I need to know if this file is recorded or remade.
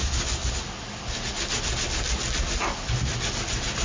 recorded